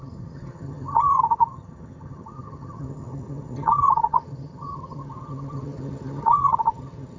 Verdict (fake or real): fake